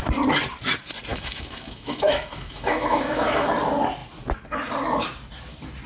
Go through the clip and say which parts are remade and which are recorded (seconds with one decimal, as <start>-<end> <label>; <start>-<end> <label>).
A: 0.0-1.1 recorded; 1.1-3.5 remade; 3.5-5.9 recorded